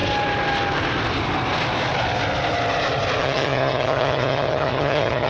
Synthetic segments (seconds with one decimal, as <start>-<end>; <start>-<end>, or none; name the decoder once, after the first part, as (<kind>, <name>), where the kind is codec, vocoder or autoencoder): 3.2-5.3 (vocoder, HiFi-GAN)